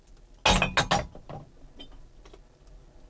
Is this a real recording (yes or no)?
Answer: yes